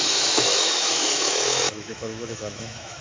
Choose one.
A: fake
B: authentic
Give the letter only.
A